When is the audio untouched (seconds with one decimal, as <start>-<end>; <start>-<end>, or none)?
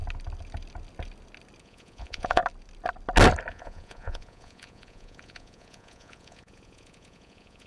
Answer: 0.0-1.6; 2.4-3.5